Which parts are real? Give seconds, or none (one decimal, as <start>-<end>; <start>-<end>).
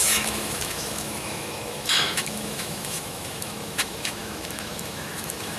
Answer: none